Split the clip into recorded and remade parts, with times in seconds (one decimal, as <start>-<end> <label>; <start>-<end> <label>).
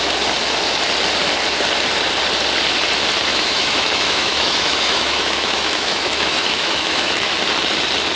0.0-3.3 recorded; 3.3-7.3 remade; 7.3-8.2 recorded